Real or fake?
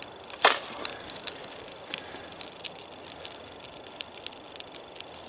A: real